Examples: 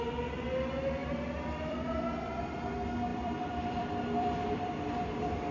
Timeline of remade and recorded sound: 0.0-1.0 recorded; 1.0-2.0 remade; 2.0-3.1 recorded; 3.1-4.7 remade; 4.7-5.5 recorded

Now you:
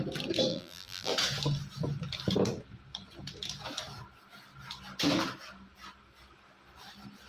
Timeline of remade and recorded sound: 0.0-0.5 recorded; 0.5-1.1 remade; 1.1-7.3 recorded

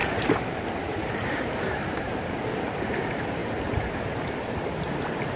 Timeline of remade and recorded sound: 0.0-5.4 remade

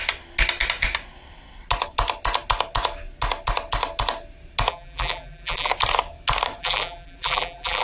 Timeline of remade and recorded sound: 0.0-4.7 recorded; 4.7-5.7 remade; 5.7-6.6 recorded; 6.6-7.8 remade

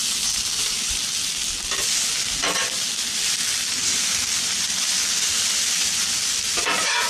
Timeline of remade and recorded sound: 0.0-3.8 recorded; 3.8-5.9 remade; 5.9-7.1 recorded

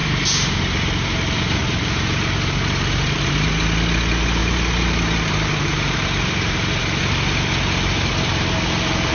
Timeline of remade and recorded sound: 0.0-0.6 remade; 0.6-1.6 recorded; 1.6-3.5 remade; 3.5-4.4 recorded; 4.4-6.8 remade; 6.8-9.1 recorded

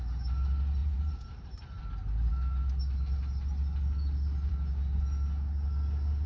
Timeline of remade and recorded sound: 0.0-0.8 recorded; 0.8-1.8 remade; 1.8-6.3 recorded

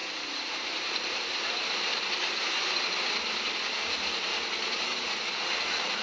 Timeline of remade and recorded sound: 0.0-2.9 remade; 2.9-6.0 recorded